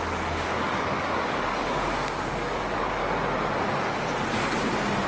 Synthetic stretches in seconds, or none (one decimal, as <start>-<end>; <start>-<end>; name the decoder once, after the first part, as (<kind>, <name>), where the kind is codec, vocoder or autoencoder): 0.0-3.0 (codec, DAC)